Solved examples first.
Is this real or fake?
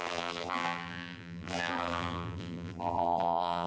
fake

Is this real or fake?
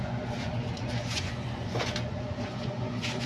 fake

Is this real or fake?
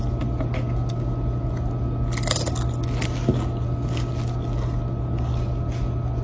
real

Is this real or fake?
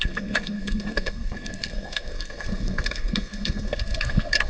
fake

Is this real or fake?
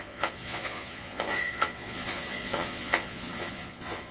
fake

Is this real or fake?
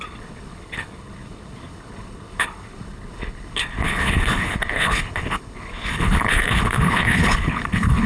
fake